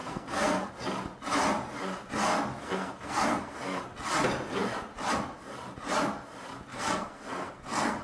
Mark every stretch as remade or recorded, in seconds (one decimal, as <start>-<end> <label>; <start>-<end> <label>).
0.0-0.7 remade; 0.7-2.6 recorded; 2.6-3.8 remade; 3.8-6.7 recorded; 6.7-8.0 remade